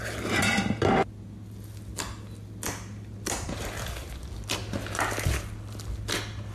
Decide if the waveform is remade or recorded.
recorded